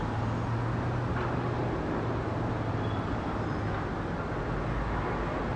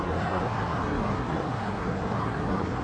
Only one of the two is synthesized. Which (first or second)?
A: second